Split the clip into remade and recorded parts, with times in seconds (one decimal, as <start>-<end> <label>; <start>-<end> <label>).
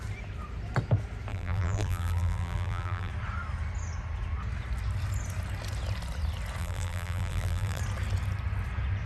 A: 0.0-1.3 recorded; 1.3-3.1 remade; 3.1-6.6 recorded; 6.6-7.8 remade; 7.8-9.1 recorded